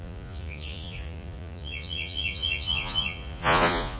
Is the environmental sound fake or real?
fake